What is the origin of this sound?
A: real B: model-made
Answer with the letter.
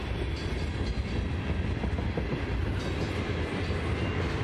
A